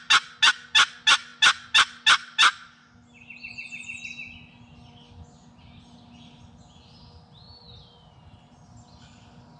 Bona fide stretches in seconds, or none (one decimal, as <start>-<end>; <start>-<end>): 0.0-9.6